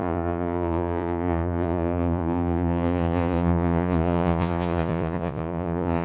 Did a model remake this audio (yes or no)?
yes